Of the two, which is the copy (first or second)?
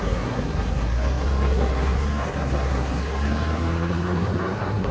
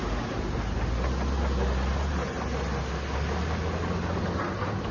first